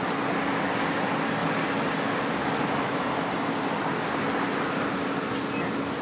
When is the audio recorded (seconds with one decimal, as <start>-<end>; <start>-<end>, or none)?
0.0-6.0